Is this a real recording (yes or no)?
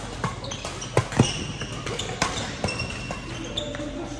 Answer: yes